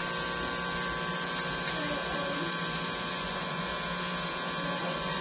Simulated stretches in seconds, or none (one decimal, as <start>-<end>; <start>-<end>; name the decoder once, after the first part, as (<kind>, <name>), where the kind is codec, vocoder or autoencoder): 3.1-3.7 (vocoder, Vocos); 4.8-5.2